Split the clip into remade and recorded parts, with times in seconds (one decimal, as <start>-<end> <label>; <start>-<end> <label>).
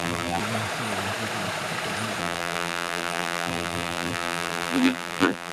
0.0-0.4 remade; 0.4-2.2 recorded; 2.2-5.5 remade